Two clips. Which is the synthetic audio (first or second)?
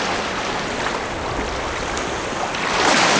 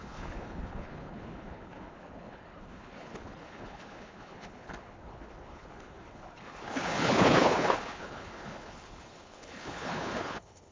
second